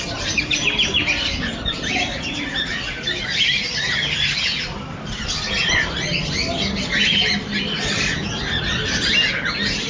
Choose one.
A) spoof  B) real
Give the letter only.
B